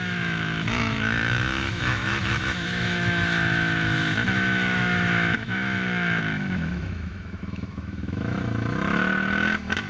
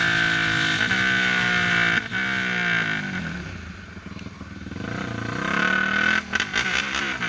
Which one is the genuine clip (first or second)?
second